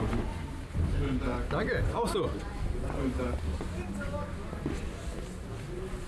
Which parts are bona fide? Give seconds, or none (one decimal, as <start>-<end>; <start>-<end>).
0.0-1.3; 2.7-6.1